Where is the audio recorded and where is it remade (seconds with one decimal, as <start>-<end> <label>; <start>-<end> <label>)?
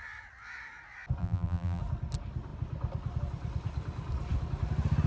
0.0-1.2 recorded; 1.2-1.8 remade; 1.8-5.1 recorded